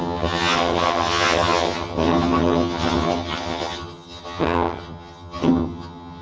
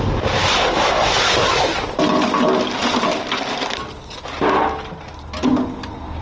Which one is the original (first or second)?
second